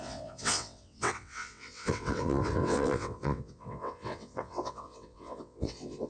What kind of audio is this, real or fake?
fake